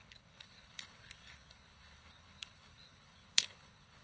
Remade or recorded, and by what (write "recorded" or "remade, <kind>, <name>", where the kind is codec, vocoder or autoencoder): remade, codec, HILCodec